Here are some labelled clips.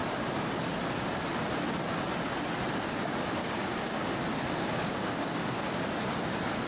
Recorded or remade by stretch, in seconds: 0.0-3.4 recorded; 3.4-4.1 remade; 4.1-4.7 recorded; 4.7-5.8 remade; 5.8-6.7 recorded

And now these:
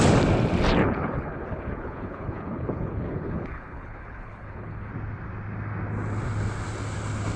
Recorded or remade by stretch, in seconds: 0.0-0.8 recorded; 0.8-4.9 remade; 4.9-7.4 recorded

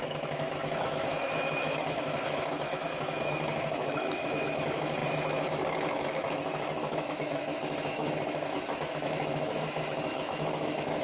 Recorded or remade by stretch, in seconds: 0.0-11.0 remade

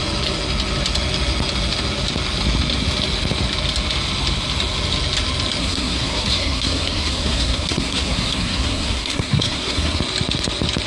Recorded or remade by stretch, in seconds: 0.0-5.6 recorded; 5.6-10.0 remade; 10.0-10.9 recorded